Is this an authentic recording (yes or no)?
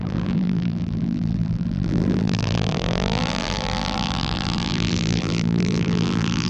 no